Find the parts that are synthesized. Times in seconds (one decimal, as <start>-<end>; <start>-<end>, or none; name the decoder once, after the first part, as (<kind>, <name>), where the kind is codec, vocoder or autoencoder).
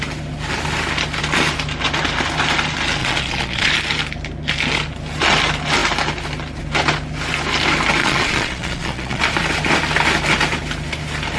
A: 3.0-3.7 (vocoder, Vocos); 8.0-9.2